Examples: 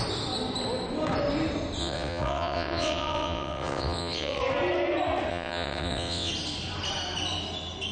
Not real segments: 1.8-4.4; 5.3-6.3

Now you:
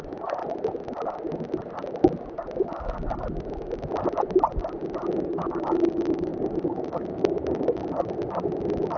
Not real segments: 0.0-0.4; 5.1-7.8

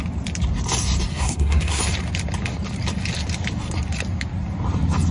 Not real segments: 1.1-1.8

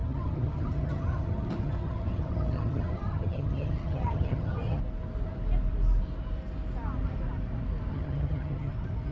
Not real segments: 0.0-4.8; 7.9-8.7

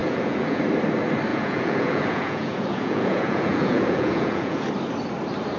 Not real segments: 0.0-0.6; 1.3-4.7

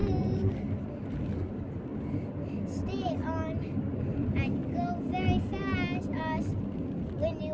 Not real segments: none